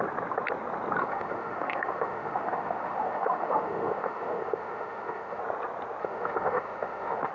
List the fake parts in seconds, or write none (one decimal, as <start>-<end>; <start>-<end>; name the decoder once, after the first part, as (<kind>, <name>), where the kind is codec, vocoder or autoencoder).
1.0-5.4 (autoencoder, DAC-VAE); 6.0-7.3